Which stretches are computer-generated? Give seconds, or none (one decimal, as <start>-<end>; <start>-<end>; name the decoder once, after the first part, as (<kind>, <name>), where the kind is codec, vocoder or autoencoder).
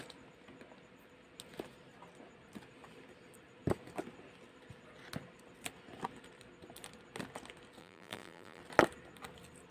7.8-8.6 (vocoder, BigVGAN v2)